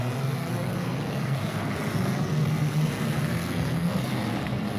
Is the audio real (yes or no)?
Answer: no